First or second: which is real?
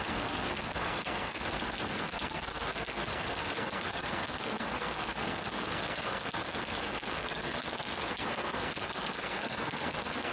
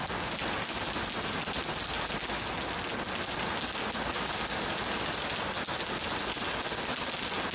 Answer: second